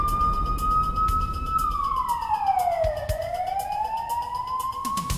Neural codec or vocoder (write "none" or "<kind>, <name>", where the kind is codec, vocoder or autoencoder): none